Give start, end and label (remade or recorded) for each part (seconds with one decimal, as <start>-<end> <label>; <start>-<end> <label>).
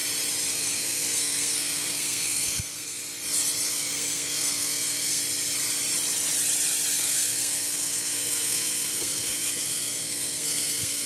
0.0-0.5 recorded; 0.5-3.0 remade; 3.0-3.7 recorded; 3.7-5.2 remade; 5.2-6.9 recorded; 6.9-11.1 remade